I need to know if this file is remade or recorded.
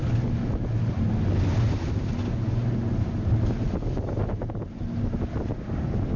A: recorded